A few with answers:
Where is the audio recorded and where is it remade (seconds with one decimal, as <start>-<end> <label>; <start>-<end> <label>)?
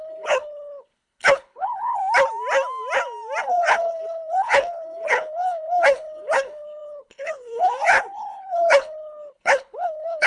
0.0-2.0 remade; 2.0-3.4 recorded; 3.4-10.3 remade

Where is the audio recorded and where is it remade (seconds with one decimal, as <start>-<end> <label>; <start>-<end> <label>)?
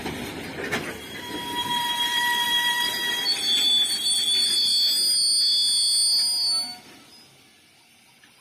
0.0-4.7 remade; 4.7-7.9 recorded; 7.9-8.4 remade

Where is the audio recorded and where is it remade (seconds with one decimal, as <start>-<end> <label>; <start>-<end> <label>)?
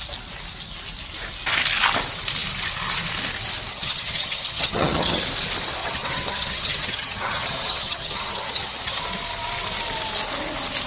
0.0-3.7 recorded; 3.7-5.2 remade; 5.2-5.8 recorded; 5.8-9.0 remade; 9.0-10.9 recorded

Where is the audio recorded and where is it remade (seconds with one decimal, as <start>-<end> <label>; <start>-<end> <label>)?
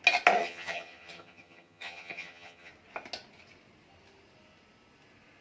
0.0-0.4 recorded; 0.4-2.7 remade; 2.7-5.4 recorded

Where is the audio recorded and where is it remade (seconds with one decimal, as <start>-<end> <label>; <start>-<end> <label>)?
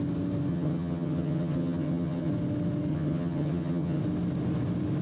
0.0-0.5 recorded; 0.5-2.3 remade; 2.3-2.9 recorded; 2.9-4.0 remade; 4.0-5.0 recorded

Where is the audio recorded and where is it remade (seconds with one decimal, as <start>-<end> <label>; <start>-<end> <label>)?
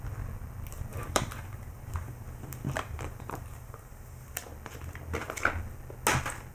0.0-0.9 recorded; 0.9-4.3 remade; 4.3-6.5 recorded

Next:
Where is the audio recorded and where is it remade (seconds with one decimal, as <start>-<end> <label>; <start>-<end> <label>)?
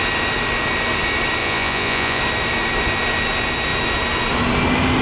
0.0-1.4 recorded; 1.4-2.2 remade; 2.2-5.0 recorded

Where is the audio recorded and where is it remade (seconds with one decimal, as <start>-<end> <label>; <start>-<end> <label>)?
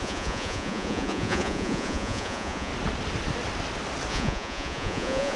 0.0-2.7 remade; 2.7-4.1 recorded; 4.1-5.4 remade